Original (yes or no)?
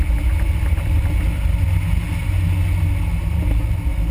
yes